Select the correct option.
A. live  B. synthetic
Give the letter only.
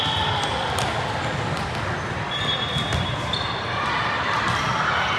A